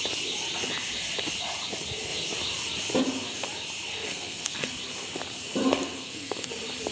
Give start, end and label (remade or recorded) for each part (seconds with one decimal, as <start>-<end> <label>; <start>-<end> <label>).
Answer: 0.0-3.9 recorded; 3.9-4.7 remade; 4.7-5.6 recorded; 5.6-6.5 remade; 6.5-6.9 recorded